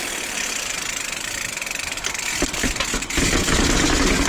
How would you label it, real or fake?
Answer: real